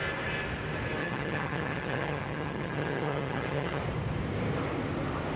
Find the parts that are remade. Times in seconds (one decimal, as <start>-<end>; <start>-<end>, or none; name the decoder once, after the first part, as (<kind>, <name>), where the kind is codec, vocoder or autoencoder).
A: 1.0-3.8 (vocoder, HiFi-GAN)